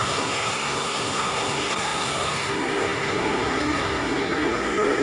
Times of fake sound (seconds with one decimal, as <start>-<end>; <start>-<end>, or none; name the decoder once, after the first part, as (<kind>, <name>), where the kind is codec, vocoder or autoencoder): 0.0-5.0 (codec, SNAC)